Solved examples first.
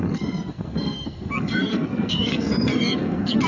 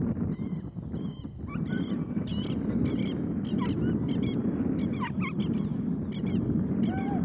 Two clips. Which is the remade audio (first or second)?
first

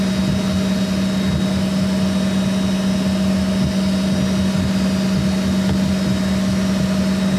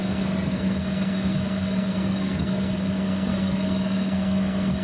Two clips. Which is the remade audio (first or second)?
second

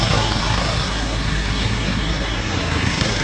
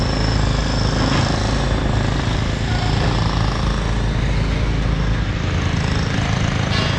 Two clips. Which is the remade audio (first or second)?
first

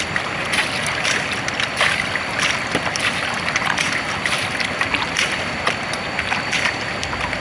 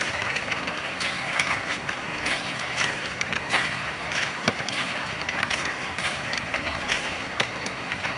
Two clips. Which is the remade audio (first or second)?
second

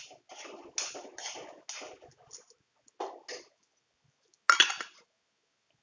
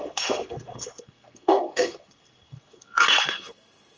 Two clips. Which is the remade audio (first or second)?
second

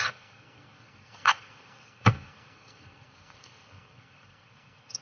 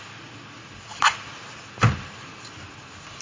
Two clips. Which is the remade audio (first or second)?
first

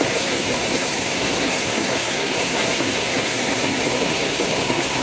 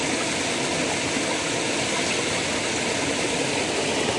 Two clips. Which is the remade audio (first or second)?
first